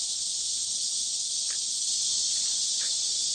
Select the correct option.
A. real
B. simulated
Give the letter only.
A